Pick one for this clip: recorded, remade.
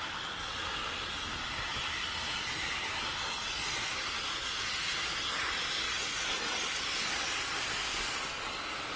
recorded